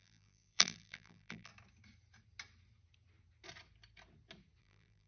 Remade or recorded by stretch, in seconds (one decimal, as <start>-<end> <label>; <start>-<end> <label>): 0.0-1.5 remade; 1.5-4.6 recorded; 4.6-5.1 remade

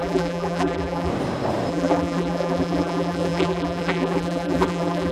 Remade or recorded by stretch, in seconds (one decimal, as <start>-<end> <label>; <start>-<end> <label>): 0.0-1.1 remade; 1.1-1.7 recorded; 1.7-5.1 remade

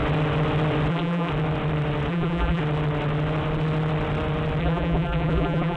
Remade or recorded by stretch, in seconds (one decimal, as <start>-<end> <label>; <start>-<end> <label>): 0.0-0.9 recorded; 0.9-1.3 remade; 1.3-2.1 recorded; 2.1-2.6 remade; 2.6-4.6 recorded; 4.6-5.8 remade

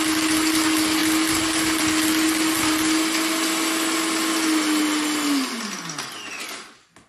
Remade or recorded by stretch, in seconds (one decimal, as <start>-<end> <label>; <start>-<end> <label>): 0.0-7.1 recorded